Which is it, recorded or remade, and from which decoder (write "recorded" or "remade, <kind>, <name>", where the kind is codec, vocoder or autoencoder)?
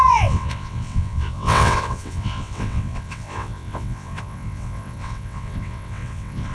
remade, vocoder, WaveNeXt